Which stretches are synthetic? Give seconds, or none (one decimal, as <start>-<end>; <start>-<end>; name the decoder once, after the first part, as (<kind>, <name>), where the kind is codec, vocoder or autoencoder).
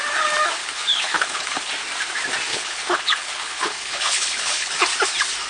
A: 0.6-1.7 (codec, HILCodec); 2.5-4.7